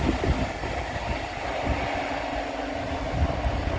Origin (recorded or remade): recorded